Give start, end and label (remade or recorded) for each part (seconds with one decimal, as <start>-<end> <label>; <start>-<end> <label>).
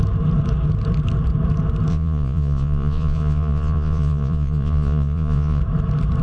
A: 0.0-1.9 recorded; 1.9-5.6 remade; 5.6-6.2 recorded